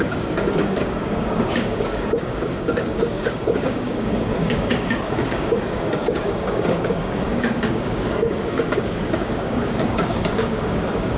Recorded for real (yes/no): no